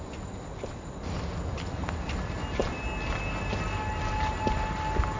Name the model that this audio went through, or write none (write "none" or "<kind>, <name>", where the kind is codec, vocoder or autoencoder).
none